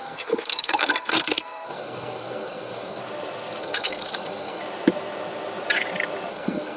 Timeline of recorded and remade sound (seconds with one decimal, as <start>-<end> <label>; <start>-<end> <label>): 0.0-3.0 remade; 3.0-3.6 recorded; 3.6-4.6 remade; 4.6-6.3 recorded; 6.3-6.8 remade